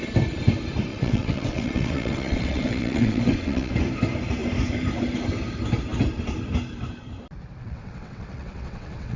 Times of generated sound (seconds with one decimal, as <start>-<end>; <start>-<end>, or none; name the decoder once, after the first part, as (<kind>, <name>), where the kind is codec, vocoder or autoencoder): 0.9-3.7 (vocoder, WaveNeXt); 7.6-9.2